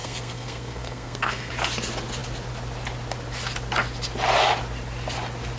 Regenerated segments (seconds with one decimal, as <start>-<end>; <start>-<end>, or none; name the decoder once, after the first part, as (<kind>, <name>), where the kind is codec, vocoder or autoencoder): 0.0-1.5 (codec, SNAC)

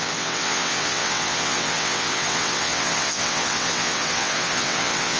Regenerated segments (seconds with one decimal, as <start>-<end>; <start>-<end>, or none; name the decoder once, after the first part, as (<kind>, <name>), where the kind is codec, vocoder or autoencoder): 0.0-5.2 (vocoder, WaveNeXt)

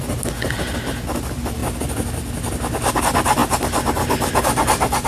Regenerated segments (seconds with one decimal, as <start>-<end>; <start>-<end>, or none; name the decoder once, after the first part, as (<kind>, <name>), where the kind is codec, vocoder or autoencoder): none

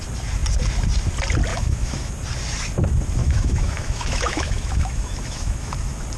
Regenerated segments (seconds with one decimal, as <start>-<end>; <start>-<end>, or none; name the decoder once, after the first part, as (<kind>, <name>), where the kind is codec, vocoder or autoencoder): 1.5-2.1 (autoencoder, DAC-VAE); 3.2-5.7